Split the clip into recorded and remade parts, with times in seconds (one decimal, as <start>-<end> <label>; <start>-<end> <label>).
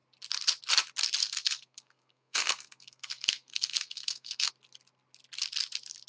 0.0-1.2 recorded; 1.2-4.5 remade; 4.5-6.1 recorded